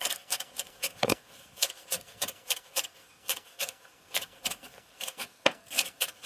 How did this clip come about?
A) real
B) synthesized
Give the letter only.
B